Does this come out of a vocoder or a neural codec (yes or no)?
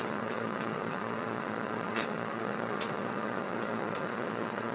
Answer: yes